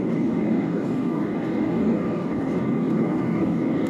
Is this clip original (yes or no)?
no